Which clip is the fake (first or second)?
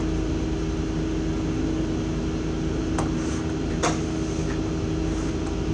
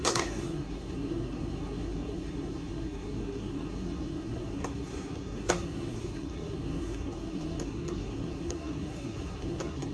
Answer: second